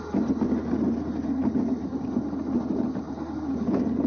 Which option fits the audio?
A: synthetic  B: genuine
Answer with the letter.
B